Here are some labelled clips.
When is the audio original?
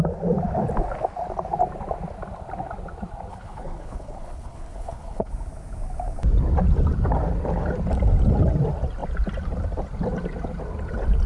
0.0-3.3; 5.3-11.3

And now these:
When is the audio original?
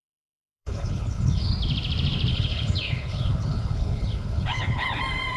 1.5-2.3; 5.0-5.4